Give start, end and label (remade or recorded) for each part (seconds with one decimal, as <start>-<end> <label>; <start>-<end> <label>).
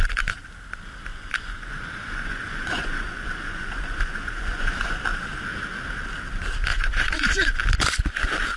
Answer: 0.0-1.1 recorded; 1.1-4.9 remade; 4.9-6.7 recorded; 6.7-7.6 remade; 7.6-8.6 recorded